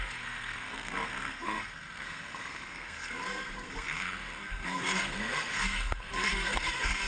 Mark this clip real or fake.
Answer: fake